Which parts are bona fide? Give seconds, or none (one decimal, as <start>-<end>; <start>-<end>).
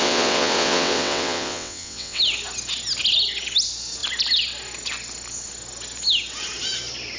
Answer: 2.2-7.2